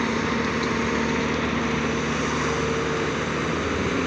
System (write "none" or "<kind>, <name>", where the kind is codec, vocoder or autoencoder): none